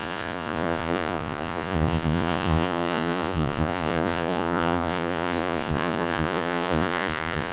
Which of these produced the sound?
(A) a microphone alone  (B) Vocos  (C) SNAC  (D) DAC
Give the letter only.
B